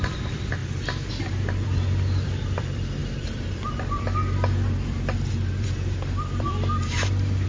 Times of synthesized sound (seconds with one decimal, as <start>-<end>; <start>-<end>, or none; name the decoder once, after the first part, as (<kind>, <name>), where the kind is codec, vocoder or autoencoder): 0.0-0.6 (vocoder, BigVGAN v2); 1.1-7.5

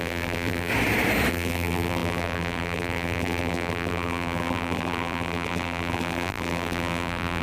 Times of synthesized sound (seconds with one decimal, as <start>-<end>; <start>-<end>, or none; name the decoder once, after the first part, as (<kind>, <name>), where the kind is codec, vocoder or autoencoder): 0.0-0.7 (vocoder, BigVGAN v2); 1.3-7.4

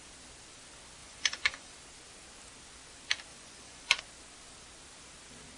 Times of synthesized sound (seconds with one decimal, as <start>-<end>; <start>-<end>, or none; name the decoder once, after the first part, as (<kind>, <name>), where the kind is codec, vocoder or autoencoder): 1.0-1.8 (vocoder, Vocos); 3.3-4.0

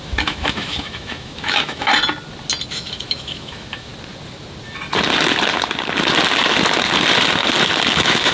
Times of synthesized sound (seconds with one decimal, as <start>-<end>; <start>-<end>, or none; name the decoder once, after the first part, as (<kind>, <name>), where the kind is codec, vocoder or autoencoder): 0.0-1.9 (autoencoder, DAC-VAE); 2.7-3.9; 7.9-8.3

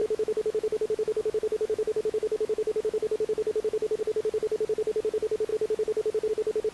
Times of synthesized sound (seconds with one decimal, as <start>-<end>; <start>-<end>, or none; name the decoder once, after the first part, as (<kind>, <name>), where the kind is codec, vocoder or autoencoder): 0.0-4.0 (autoencoder, DAC-VAE)

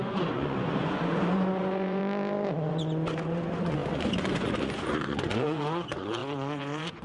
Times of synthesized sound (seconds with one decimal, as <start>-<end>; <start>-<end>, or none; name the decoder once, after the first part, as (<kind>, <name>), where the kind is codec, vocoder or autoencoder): 0.0-2.0 (vocoder, Vocos); 2.7-7.0

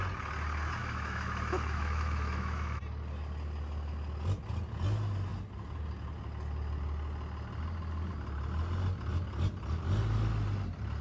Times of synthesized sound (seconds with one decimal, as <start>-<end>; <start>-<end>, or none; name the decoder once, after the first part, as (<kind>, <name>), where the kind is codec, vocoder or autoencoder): 0.8-2.8 (autoencoder, DAC-VAE)